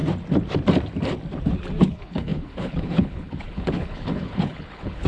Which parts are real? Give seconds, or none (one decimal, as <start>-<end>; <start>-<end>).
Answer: 0.0-1.8